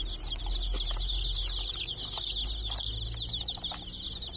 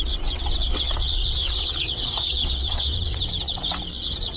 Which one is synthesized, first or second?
second